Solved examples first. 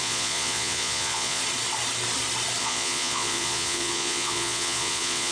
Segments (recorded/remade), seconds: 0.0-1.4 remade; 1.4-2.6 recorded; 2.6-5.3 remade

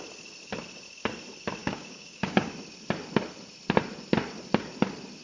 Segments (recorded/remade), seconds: 0.0-1.6 recorded; 1.6-2.5 remade; 2.5-5.2 recorded